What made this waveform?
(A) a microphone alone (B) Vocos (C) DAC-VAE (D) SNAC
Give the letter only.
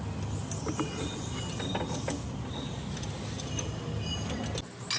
A